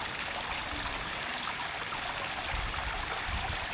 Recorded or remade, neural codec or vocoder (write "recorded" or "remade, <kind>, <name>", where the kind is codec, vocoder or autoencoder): recorded